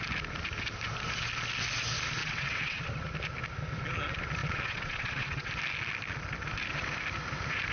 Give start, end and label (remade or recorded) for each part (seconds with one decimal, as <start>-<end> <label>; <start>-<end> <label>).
0.0-2.2 recorded; 2.2-2.9 remade; 2.9-4.4 recorded; 4.4-5.5 remade; 5.5-7.7 recorded